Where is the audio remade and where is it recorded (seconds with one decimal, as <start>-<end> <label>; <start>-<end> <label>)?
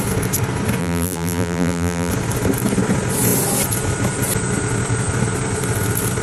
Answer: 0.0-0.8 recorded; 0.8-2.1 remade; 2.1-6.2 recorded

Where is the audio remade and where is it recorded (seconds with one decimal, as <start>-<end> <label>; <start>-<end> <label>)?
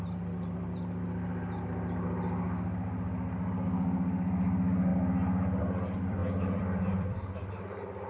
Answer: 0.0-4.9 remade; 4.9-5.6 recorded; 5.6-8.1 remade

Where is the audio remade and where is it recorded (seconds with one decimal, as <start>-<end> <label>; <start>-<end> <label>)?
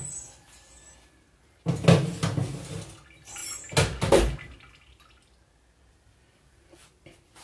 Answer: 0.0-7.4 recorded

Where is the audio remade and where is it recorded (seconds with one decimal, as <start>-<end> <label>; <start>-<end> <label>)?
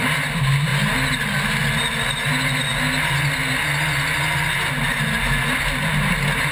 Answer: 0.0-6.5 recorded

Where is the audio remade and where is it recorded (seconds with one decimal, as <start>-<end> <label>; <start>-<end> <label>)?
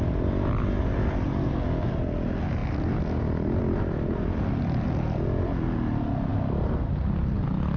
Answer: 0.0-7.8 recorded